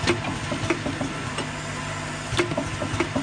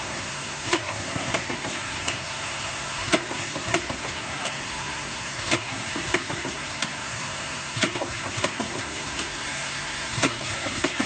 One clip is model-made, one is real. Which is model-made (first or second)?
second